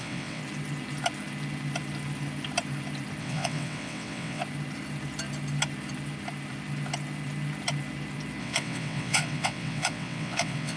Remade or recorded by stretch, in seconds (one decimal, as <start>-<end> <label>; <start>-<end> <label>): 0.0-0.4 remade; 0.4-3.2 recorded; 3.2-4.4 remade; 4.4-8.4 recorded; 8.4-10.8 remade